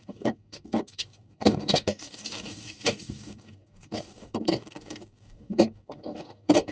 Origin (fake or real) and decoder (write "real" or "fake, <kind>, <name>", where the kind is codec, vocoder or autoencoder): fake, codec, DAC